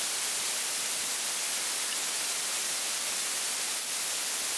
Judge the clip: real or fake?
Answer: real